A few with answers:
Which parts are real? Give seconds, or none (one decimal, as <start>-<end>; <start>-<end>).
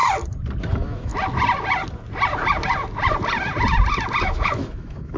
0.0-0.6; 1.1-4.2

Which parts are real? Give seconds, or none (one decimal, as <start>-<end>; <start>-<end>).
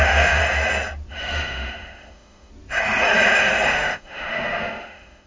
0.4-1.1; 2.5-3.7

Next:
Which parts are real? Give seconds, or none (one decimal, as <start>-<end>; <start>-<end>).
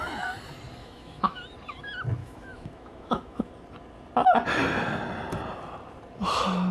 0.0-0.8; 1.4-2.2; 3.5-6.7